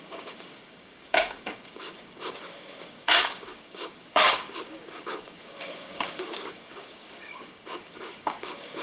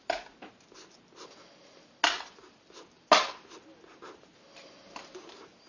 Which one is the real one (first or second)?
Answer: second